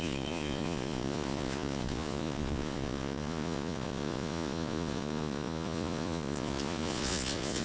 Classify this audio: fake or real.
fake